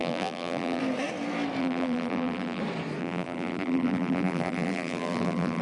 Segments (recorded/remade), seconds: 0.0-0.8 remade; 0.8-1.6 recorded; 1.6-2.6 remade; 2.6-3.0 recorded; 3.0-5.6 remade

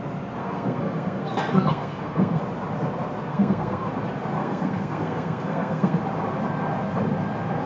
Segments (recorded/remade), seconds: 0.0-0.4 recorded; 0.4-2.4 remade; 2.4-3.3 recorded; 3.3-3.9 remade; 3.9-4.4 recorded; 4.4-6.0 remade; 6.0-7.7 recorded

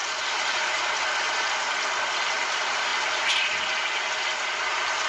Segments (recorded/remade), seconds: 0.0-0.8 remade; 0.8-5.1 recorded

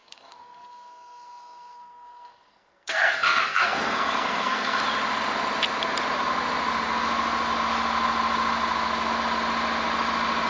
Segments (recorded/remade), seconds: 0.0-4.8 remade; 4.8-10.5 recorded

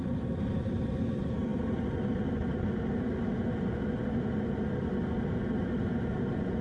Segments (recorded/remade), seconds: 0.0-6.6 recorded